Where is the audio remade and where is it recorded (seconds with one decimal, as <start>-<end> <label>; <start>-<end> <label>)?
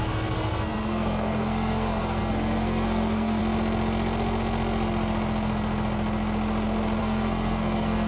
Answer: 0.0-3.4 remade; 3.4-7.0 recorded; 7.0-8.1 remade